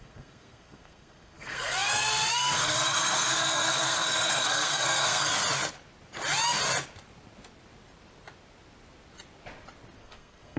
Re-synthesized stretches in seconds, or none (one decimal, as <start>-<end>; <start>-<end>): 0.0-5.3; 10.0-10.6